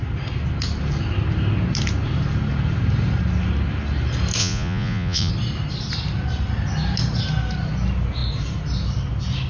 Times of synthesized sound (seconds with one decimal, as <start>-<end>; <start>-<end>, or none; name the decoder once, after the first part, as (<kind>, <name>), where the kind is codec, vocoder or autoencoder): 4.4-5.3 (vocoder, Vocos)